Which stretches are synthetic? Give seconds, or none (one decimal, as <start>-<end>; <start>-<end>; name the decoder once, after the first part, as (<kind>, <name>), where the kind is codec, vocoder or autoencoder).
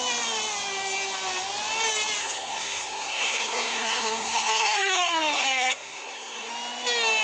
2.2-6.5 (codec, SNAC)